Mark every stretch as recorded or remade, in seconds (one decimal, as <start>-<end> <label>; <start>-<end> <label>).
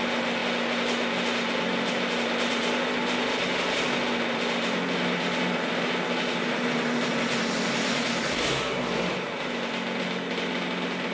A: 0.0-11.1 recorded